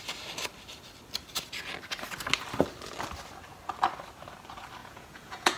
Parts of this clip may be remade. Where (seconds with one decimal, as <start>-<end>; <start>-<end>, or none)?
4.8-5.6